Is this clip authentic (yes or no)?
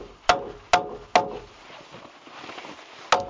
yes